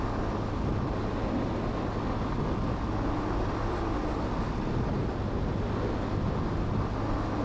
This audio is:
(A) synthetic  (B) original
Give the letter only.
B